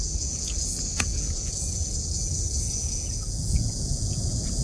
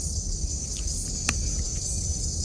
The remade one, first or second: first